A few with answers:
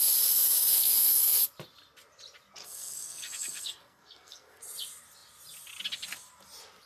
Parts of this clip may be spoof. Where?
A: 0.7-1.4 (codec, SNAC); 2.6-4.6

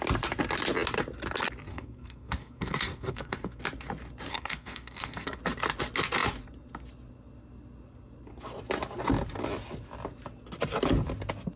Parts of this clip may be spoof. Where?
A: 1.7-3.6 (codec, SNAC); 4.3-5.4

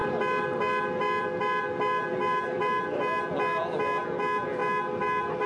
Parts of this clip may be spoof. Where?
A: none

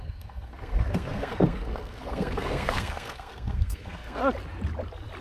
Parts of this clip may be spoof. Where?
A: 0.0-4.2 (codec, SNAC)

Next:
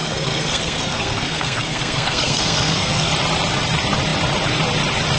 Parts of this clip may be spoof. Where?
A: 0.0-3.1 (codec, SNAC)

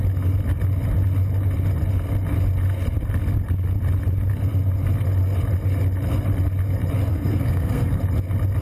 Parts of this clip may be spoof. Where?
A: 7.1-8.0 (codec, SNAC)

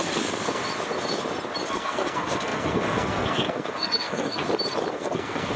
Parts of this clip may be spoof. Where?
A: 0.0-0.6 (codec, SNAC); 1.7-4.4; 4.9-5.6

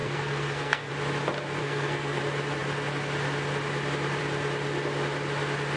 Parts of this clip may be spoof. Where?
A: 0.0-0.9 (codec, SNAC); 1.6-2.2